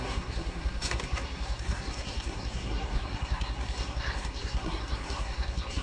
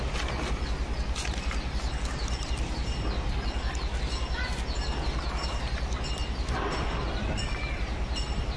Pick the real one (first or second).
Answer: second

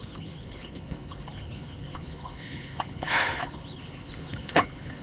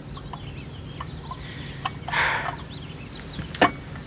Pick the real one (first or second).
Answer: second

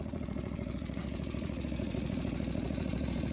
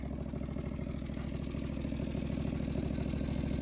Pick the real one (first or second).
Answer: second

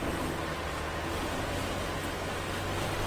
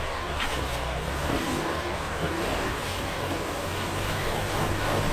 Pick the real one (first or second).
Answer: first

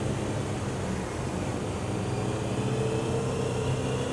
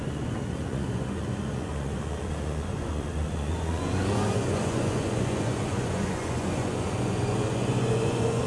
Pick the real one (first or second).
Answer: first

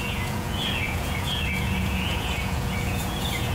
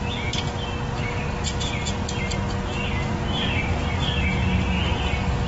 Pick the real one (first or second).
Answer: second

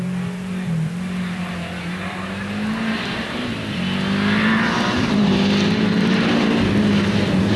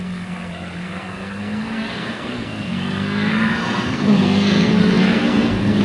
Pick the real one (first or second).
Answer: first